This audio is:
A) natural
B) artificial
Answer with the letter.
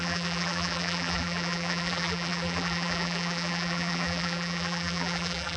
B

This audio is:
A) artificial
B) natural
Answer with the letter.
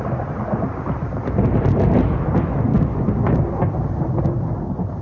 B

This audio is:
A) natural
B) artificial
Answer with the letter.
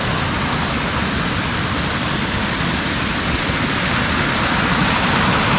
A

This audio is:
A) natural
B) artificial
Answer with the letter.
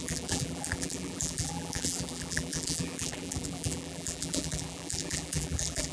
B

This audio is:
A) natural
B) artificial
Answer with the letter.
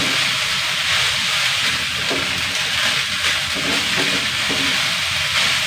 A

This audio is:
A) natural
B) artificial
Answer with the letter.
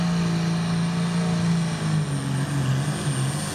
A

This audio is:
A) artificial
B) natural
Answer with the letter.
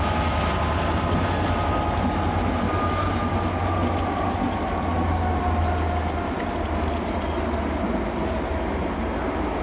B